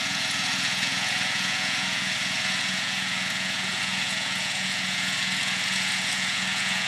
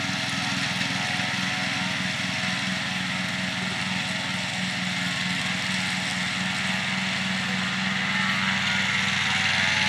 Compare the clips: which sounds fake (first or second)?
first